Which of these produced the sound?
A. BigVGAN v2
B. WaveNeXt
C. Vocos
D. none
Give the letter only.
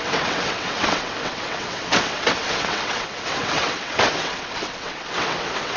B